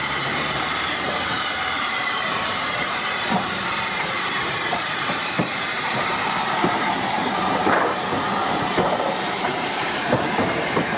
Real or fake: fake